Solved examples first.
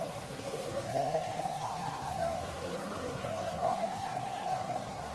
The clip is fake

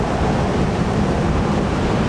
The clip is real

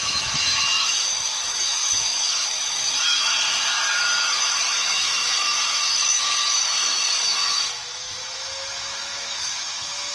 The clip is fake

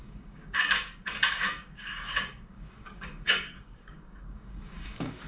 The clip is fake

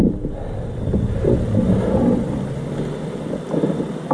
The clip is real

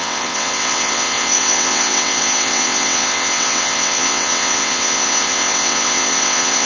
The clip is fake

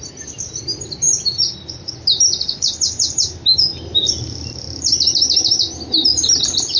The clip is real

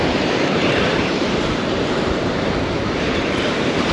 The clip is fake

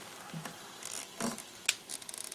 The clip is real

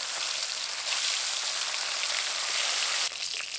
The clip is real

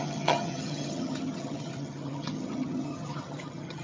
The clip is fake